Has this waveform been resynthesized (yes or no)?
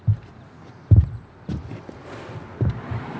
no